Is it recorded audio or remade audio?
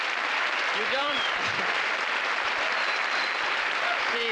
remade